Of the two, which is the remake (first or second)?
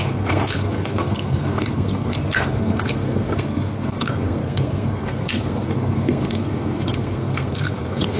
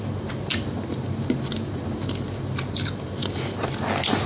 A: first